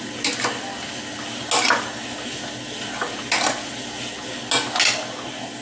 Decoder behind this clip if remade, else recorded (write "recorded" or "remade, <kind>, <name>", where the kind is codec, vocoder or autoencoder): recorded